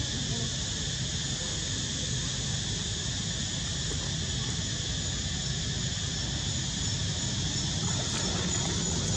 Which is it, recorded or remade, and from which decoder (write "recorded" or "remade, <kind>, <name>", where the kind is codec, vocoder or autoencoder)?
recorded